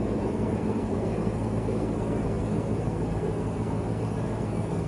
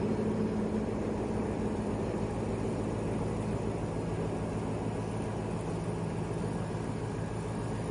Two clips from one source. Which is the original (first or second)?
second